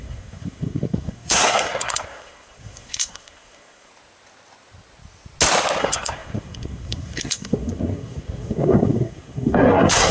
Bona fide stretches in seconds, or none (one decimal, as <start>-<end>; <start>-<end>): 3.9-5.8